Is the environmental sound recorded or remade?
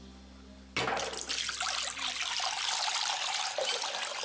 recorded